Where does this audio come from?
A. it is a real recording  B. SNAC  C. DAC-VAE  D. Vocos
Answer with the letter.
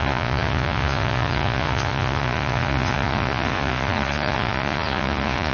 D